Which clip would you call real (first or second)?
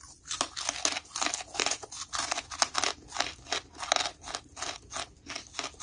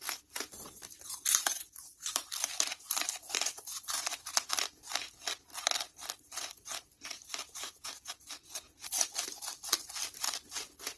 first